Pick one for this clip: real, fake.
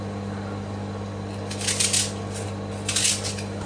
real